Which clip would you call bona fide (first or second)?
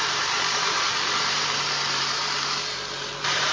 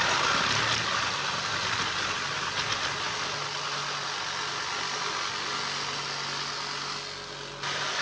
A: second